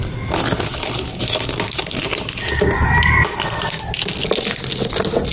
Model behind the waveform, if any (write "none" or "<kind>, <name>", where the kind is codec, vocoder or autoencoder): none